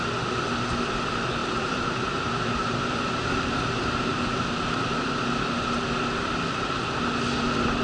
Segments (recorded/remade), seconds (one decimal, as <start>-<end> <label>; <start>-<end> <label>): 0.0-1.4 recorded; 1.4-4.8 remade; 4.8-7.8 recorded